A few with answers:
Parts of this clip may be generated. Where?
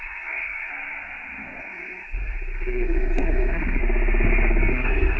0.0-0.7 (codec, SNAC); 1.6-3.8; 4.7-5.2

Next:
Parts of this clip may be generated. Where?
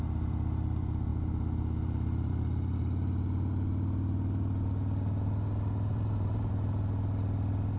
5.9-6.5 (vocoder, BigVGAN v2)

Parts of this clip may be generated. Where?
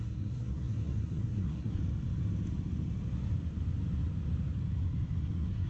0.0-1.8 (codec, SNAC); 5.2-5.7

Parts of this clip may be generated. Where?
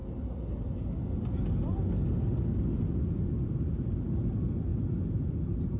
none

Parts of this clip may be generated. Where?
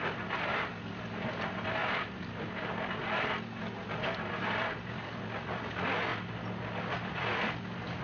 none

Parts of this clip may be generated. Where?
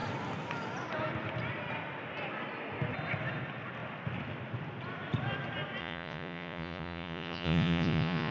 5.8-8.3 (vocoder, Vocos)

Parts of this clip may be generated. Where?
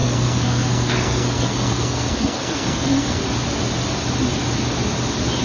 0.0-3.2 (codec, SNAC)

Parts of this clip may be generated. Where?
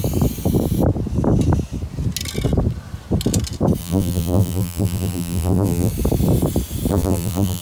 3.8-5.9 (vocoder, BigVGAN v2); 6.9-7.6